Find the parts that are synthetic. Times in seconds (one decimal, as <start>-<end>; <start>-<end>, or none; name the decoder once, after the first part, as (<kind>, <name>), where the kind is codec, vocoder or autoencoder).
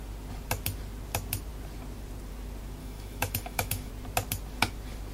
2.8-3.9 (autoencoder, DAC-VAE)